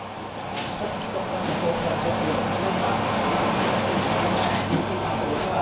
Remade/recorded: recorded